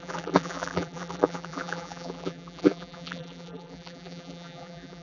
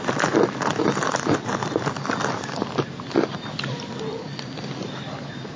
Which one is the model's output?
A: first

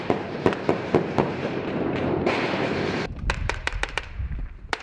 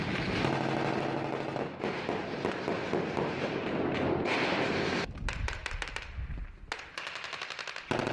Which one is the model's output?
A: first